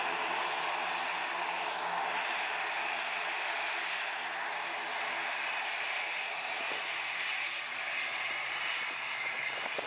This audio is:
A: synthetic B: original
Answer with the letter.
B